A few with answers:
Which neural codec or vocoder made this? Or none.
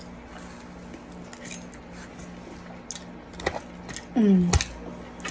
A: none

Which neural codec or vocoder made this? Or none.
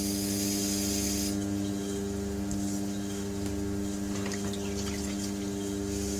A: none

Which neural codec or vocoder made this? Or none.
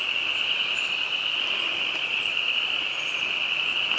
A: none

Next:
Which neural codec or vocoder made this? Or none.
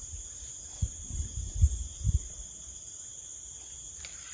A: vocoder, BigVGAN v2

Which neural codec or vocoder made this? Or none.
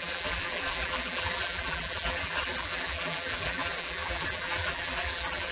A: vocoder, BigVGAN v2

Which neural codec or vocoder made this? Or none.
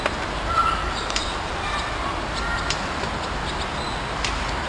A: none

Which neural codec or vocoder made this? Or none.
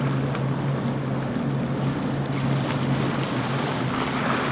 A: none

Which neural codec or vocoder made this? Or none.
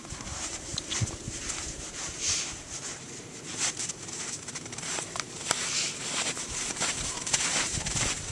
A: vocoder, BigVGAN v2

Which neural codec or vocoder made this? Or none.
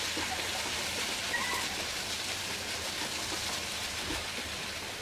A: none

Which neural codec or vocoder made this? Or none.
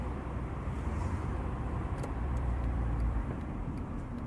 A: vocoder, BigVGAN v2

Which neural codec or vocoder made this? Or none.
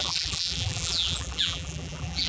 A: vocoder, BigVGAN v2